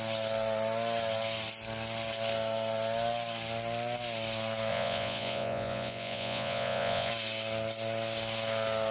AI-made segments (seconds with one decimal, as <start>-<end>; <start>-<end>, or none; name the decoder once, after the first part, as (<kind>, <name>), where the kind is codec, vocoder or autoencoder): 4.7-7.1 (vocoder, Vocos)

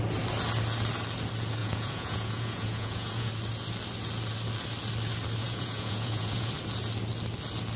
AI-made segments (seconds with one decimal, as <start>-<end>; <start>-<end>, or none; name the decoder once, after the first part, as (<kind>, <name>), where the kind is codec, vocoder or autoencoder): 1.6-3.3 (vocoder, Vocos); 5.4-6.5